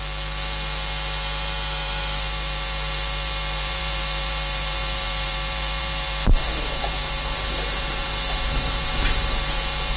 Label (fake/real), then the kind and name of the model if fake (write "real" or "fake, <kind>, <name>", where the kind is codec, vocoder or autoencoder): fake, vocoder, BigVGAN v2